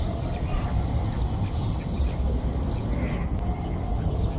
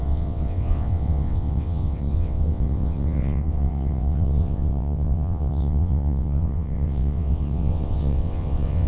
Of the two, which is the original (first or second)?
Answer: first